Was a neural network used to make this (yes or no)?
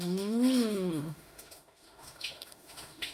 yes